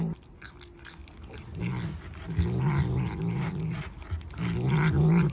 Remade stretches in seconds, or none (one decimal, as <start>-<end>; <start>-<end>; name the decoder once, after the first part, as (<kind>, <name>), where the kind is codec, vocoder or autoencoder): none